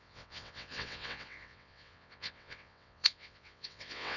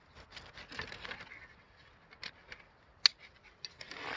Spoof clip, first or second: first